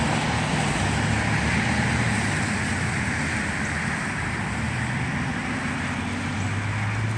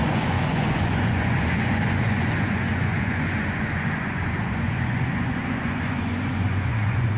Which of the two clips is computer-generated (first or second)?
second